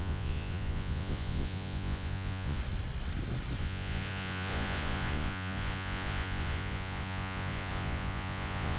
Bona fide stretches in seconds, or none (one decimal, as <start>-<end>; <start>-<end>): 2.6-3.6